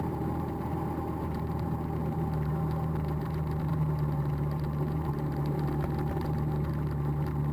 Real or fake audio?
fake